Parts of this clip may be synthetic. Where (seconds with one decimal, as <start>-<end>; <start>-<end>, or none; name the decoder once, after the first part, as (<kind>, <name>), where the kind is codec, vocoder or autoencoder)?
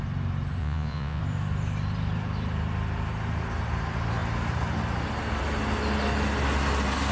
0.6-1.2 (vocoder, Vocos)